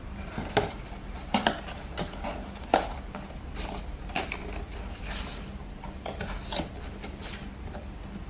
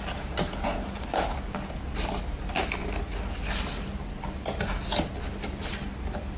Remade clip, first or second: first